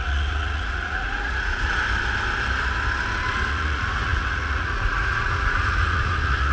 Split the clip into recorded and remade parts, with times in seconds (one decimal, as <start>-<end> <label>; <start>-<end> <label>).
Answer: 0.0-1.7 remade; 1.7-3.5 recorded; 3.5-6.5 remade